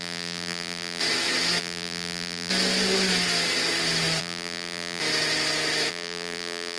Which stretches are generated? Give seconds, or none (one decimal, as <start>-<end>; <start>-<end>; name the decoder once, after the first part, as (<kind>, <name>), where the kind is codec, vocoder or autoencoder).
0.0-1.0 (vocoder, BigVGAN v2); 1.6-2.5; 4.2-5.0; 5.9-6.8